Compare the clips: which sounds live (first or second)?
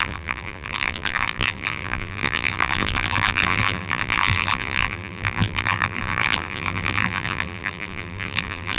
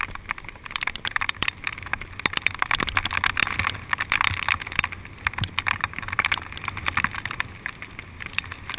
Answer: second